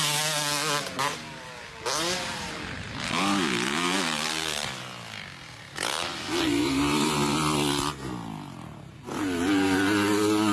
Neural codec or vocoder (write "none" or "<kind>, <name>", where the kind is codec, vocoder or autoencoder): none